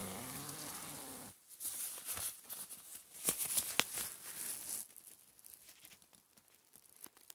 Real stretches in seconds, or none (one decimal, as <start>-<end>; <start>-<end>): 0.0-7.3